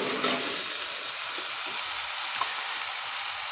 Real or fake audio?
real